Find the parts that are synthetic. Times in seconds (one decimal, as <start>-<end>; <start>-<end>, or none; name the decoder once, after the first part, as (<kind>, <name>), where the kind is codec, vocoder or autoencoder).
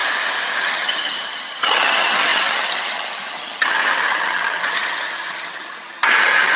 0.6-6.6 (vocoder, HiFi-GAN)